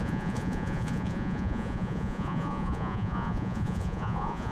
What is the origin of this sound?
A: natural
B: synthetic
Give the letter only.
B